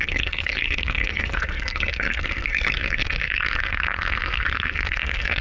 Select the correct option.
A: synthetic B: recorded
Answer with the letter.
A